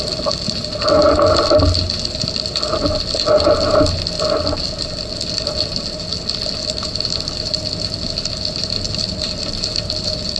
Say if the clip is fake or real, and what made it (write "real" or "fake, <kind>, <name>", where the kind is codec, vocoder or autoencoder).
real